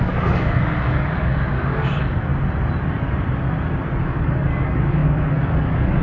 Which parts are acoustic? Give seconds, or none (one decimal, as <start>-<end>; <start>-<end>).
2.3-4.0